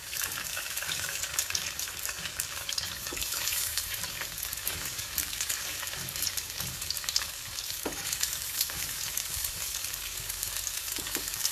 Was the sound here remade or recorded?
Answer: remade